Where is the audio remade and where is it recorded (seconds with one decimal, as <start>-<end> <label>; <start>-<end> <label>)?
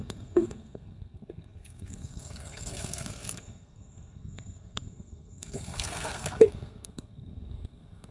0.0-8.1 remade